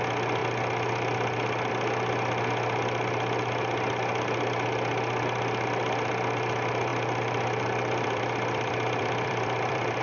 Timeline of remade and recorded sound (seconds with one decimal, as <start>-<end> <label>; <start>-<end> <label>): 0.0-6.9 recorded; 6.9-10.0 remade